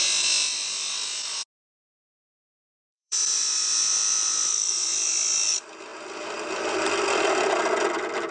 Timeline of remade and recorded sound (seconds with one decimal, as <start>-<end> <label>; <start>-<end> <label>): 0.0-2.9 recorded; 2.9-5.1 remade; 5.1-8.3 recorded